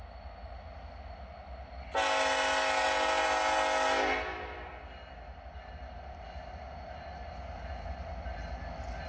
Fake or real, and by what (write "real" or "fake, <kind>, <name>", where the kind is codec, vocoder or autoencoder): real